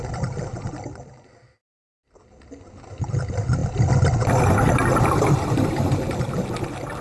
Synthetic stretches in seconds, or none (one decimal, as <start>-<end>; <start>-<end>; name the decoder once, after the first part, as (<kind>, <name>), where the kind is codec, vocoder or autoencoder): none